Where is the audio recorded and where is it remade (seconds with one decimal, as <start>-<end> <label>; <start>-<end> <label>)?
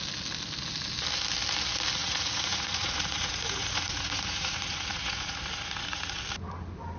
0.0-2.0 recorded; 2.0-6.2 remade; 6.2-7.0 recorded